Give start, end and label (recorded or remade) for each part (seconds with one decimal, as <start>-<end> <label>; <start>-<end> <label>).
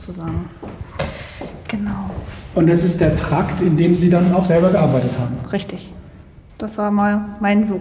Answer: 0.0-4.9 recorded; 4.9-5.8 remade; 5.8-7.8 recorded